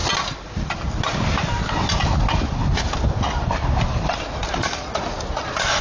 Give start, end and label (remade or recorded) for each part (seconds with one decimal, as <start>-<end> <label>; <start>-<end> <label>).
0.0-5.8 recorded